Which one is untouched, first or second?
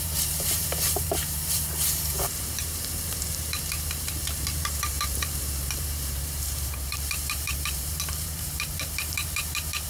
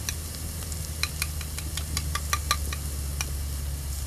second